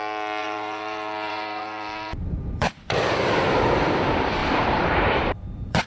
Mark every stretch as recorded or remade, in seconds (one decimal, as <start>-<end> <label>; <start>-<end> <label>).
0.0-0.4 recorded; 0.4-3.9 remade; 3.9-4.4 recorded; 4.4-5.9 remade